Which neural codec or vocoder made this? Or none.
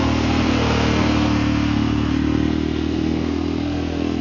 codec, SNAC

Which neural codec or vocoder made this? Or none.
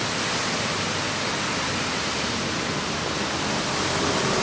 none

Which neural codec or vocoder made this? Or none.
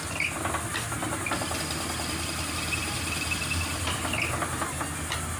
none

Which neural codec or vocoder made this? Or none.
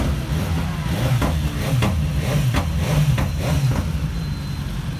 none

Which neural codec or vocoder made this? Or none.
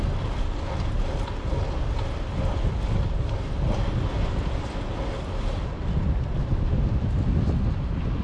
none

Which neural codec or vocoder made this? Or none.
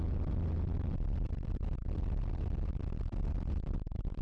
none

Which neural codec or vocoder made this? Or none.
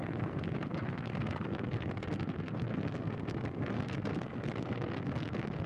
codec, SNAC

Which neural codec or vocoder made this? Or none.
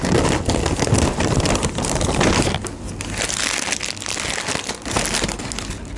none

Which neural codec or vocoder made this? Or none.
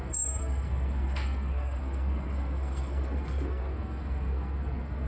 codec, SNAC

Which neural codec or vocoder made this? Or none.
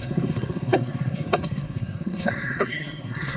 codec, SNAC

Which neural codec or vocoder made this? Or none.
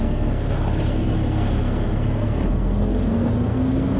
codec, SNAC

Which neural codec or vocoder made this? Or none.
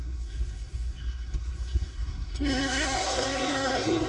codec, SNAC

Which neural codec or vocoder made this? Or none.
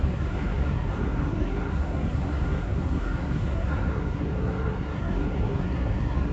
codec, SNAC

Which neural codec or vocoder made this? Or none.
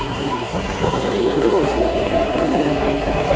codec, SNAC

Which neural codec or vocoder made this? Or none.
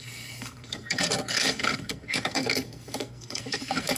codec, SNAC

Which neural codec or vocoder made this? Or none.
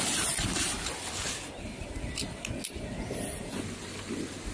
none